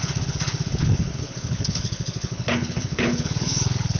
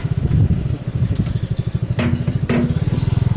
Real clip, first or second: second